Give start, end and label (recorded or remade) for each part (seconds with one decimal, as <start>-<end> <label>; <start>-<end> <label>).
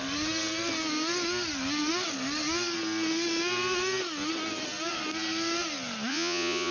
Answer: 0.0-6.1 recorded; 6.1-6.7 remade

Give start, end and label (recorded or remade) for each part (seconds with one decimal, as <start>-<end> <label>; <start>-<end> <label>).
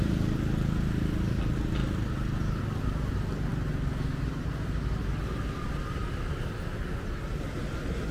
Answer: 0.0-8.1 recorded